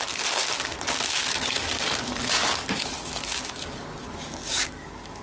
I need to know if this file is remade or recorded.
remade